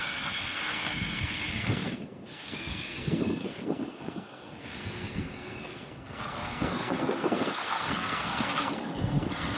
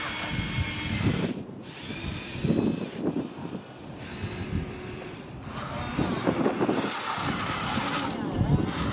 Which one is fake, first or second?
first